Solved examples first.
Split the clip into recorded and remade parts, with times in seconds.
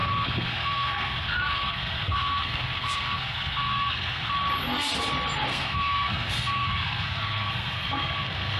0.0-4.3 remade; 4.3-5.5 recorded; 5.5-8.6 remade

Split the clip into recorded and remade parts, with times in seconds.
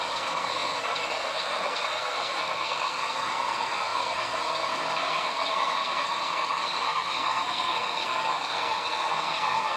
0.0-9.8 remade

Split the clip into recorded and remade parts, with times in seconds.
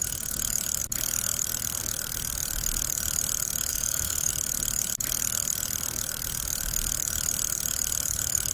0.0-3.7 recorded; 3.7-4.3 remade; 4.3-8.5 recorded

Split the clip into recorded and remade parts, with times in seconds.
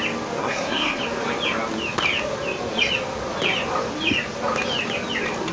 0.0-0.4 recorded; 0.4-1.0 remade; 1.0-5.5 recorded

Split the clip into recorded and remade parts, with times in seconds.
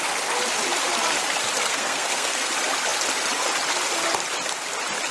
0.0-1.6 recorded; 1.6-2.5 remade; 2.5-5.1 recorded